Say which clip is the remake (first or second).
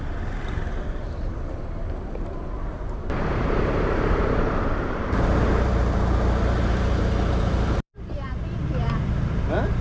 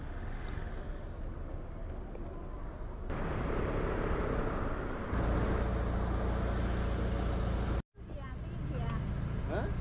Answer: first